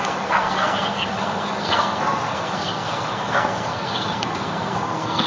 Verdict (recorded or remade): remade